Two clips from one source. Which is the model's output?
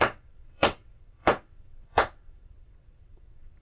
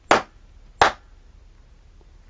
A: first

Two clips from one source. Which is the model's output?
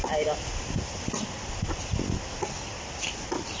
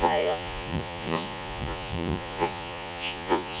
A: second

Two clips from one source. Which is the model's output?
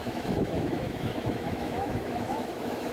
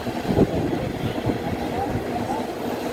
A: first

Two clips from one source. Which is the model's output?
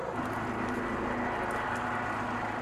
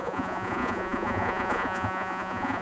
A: second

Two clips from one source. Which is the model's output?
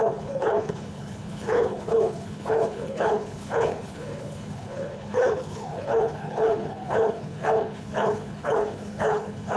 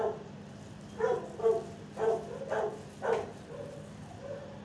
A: first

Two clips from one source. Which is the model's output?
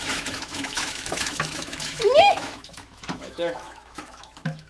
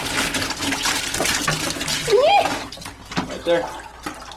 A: first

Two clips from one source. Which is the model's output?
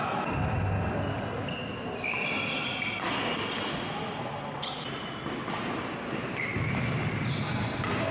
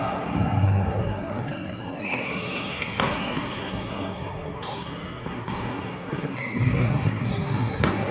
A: second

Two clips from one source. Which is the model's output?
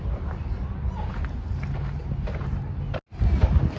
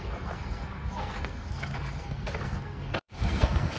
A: second